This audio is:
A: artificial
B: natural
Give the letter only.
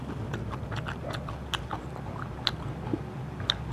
B